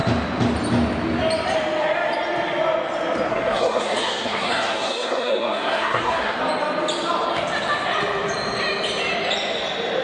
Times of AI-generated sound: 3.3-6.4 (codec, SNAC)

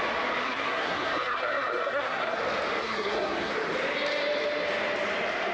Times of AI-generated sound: 0.4-2.4 (codec, SNAC); 2.8-3.5

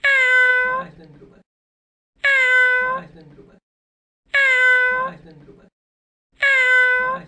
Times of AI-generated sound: none

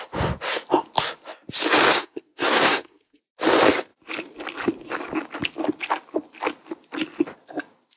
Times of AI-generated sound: 1.9-3.2 (codec, SNAC)

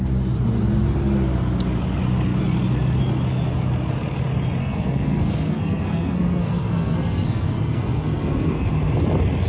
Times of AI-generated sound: 4.6-8.7 (codec, SNAC)

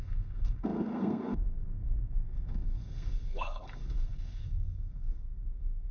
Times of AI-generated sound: 0.0-5.9 (codec, SNAC)

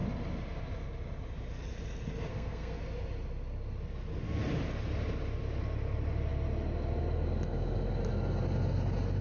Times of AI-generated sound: 2.3-2.8 (codec, SNAC)

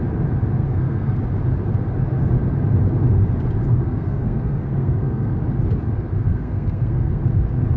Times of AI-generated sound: 0.6-1.2 (codec, SNAC); 3.6-5.4; 6.3-7.2